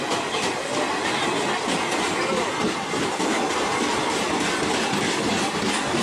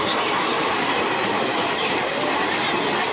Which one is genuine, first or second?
first